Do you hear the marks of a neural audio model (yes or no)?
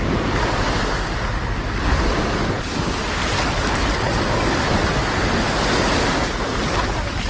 no